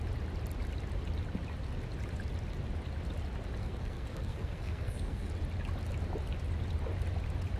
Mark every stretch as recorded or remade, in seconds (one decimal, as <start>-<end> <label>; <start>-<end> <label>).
0.0-3.6 recorded; 3.6-5.3 remade; 5.3-7.6 recorded